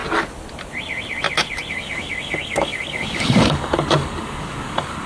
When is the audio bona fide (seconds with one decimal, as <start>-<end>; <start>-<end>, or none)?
0.0-1.7